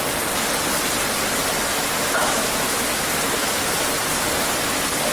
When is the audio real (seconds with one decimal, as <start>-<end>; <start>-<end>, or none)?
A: 0.0-2.2; 3.1-5.1